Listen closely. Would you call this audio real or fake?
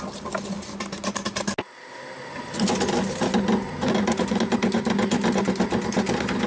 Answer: real